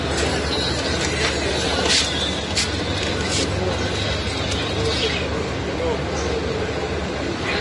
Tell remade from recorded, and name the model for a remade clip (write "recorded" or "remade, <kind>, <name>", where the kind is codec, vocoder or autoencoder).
recorded